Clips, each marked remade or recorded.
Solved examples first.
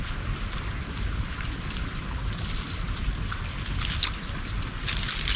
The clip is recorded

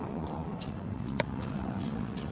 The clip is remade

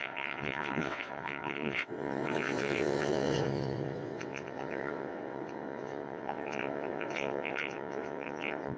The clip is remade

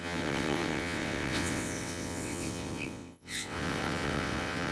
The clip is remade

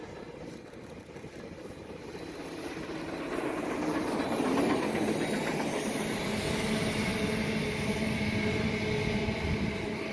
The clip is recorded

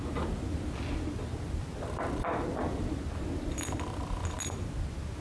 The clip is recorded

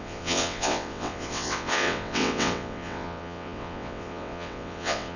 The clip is remade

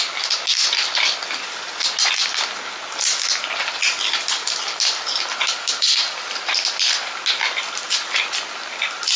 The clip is recorded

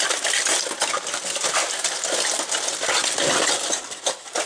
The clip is recorded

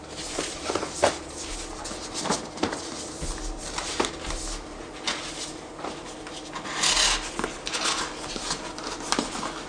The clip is recorded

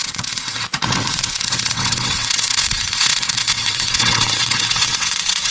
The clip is remade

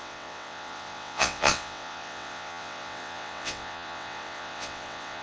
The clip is remade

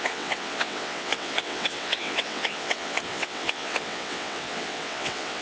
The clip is remade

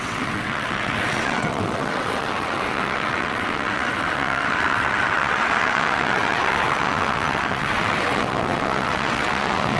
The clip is remade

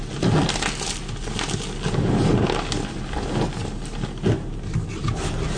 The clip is recorded